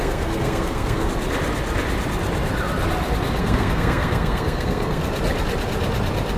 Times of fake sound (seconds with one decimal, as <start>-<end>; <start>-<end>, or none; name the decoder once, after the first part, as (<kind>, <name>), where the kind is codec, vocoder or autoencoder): 0.0-1.1 (codec, SNAC); 3.4-5.0